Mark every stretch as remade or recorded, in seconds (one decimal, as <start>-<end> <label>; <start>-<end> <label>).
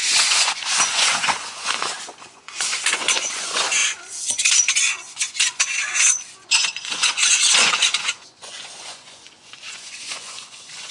0.0-10.9 remade